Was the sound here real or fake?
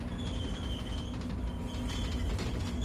real